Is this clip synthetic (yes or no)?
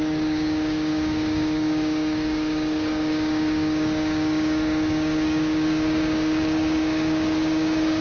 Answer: yes